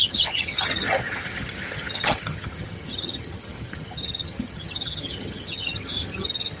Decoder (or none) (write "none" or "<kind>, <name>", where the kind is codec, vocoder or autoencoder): vocoder, HiFi-GAN